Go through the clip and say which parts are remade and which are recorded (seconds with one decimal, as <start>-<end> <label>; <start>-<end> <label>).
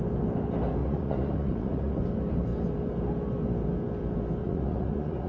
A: 0.0-0.8 recorded; 0.8-2.0 remade; 2.0-4.4 recorded; 4.4-5.3 remade